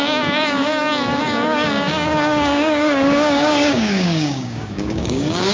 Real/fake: fake